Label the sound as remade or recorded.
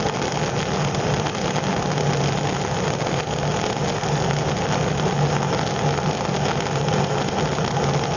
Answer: recorded